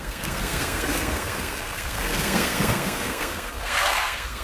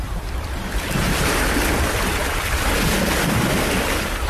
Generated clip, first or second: first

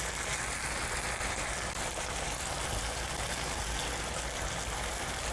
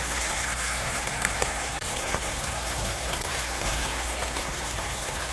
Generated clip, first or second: second